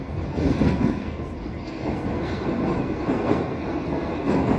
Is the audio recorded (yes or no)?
no